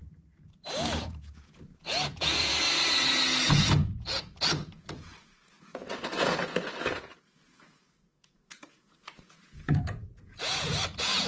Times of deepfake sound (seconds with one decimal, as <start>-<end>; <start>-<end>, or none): 0.8-2.5; 3.5-11.3